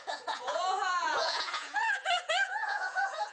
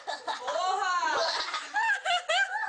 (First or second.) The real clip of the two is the second